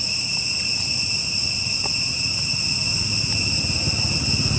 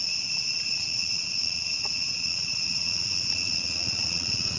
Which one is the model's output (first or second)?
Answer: second